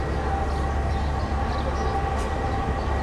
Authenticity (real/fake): real